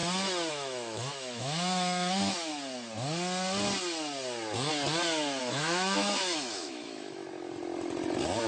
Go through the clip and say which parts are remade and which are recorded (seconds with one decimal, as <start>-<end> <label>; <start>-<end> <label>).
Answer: 0.0-0.5 recorded; 0.5-2.5 remade; 2.5-5.4 recorded; 5.4-7.2 remade; 7.2-8.5 recorded

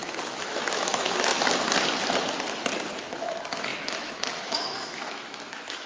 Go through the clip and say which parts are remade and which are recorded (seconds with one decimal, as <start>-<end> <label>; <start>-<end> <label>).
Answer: 0.0-1.3 remade; 1.3-3.0 recorded; 3.0-5.9 remade

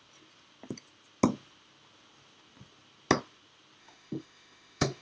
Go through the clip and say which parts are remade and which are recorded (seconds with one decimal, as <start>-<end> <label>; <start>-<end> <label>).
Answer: 0.0-3.8 recorded; 3.8-5.0 remade

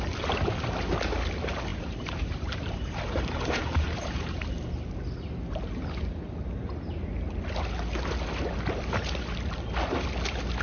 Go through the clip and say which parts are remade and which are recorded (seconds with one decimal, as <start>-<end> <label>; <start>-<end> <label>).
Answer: 0.0-1.7 recorded; 1.7-4.5 remade; 4.5-10.6 recorded

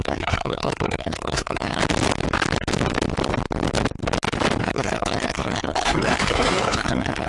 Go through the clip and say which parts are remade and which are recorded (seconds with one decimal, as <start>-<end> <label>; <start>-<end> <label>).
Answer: 0.0-1.8 remade; 1.8-4.6 recorded; 4.6-7.3 remade

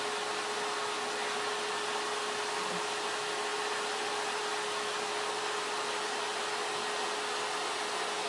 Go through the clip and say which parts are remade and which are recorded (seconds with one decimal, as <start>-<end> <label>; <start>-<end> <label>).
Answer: 0.0-8.3 recorded

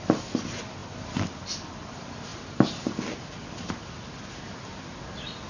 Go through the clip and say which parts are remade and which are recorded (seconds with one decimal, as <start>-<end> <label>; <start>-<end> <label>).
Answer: 0.0-5.5 recorded